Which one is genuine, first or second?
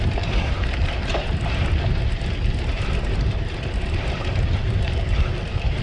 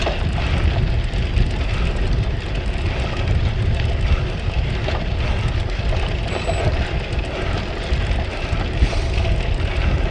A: second